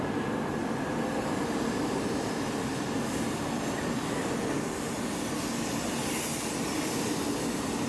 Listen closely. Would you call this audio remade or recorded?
recorded